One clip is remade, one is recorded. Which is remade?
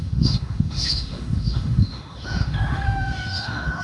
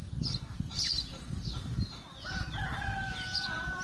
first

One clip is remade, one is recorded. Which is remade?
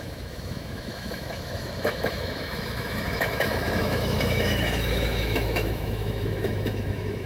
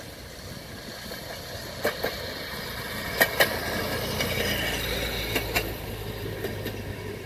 first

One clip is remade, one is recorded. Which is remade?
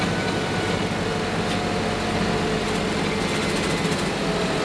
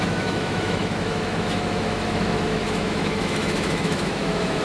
second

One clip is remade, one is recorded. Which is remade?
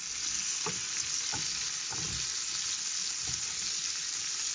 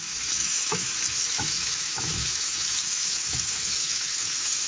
second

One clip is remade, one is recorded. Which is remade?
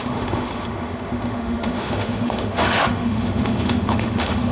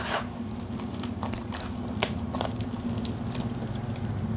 first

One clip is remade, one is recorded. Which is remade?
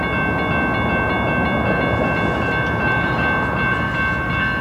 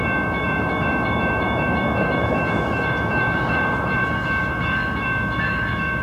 second